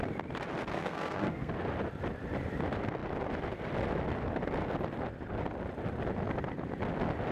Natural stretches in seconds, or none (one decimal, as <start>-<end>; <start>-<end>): 0.0-0.7; 1.5-7.3

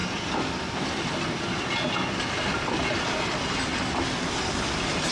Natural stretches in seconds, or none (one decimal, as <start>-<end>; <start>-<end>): 0.0-5.1

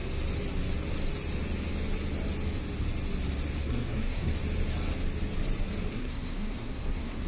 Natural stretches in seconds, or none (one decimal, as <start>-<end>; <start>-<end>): 0.0-3.6; 4.3-5.9